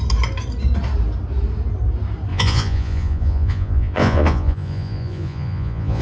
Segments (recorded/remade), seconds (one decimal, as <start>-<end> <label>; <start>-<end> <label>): 0.0-2.3 recorded; 2.3-6.0 remade